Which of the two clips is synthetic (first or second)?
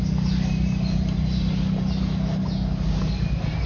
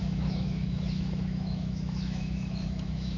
second